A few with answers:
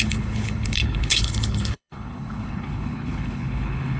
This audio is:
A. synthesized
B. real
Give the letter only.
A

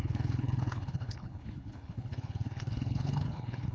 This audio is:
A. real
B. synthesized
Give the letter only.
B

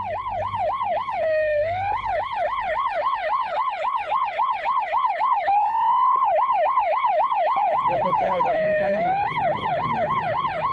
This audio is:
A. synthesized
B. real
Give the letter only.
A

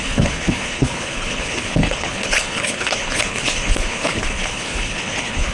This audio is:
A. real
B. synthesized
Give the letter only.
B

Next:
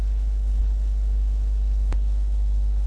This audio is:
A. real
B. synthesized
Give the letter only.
B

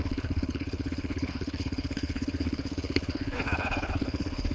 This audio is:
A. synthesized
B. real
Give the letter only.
A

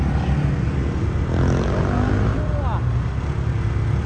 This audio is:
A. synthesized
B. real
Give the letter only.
B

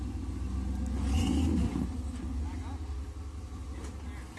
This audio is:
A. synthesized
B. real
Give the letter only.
B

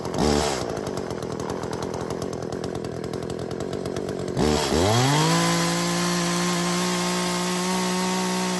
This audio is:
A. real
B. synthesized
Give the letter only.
A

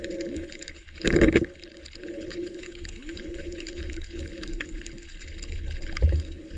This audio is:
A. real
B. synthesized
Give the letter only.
B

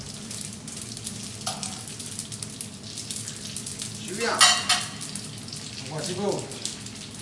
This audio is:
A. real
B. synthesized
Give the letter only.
A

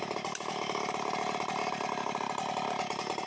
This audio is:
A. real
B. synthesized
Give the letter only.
A